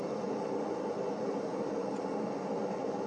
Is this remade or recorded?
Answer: remade